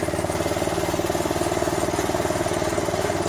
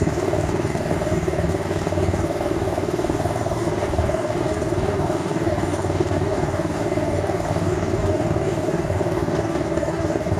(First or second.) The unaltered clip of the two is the first